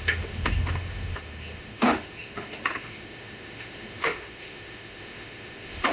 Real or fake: fake